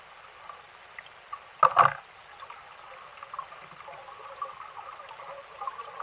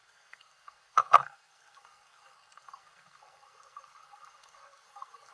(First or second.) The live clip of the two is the first